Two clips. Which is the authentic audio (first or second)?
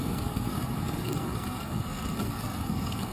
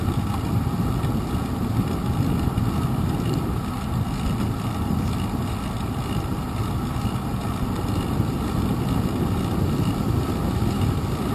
second